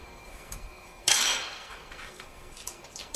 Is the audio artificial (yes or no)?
yes